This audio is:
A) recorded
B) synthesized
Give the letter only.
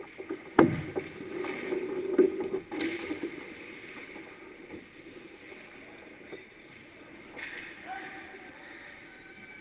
A